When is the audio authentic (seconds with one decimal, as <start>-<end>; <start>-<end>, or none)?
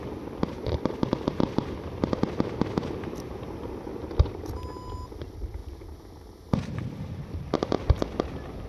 0.0-8.7